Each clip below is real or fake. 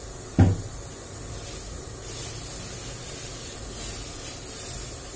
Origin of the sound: real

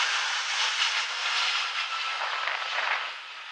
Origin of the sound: real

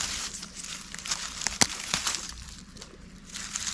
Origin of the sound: real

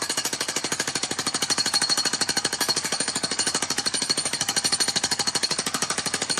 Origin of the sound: fake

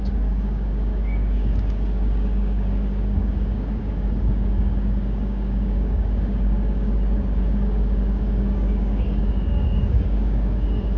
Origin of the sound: fake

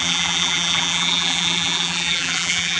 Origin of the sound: fake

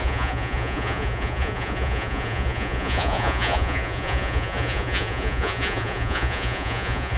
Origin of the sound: fake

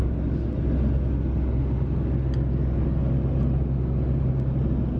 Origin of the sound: real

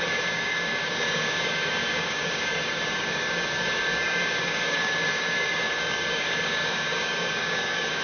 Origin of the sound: fake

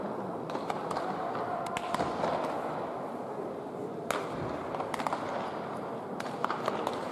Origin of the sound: real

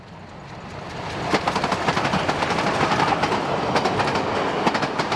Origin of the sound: real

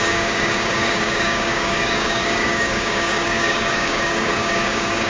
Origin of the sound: fake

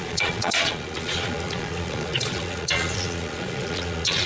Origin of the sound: fake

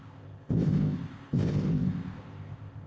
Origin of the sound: fake